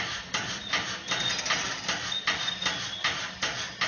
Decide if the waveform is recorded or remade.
recorded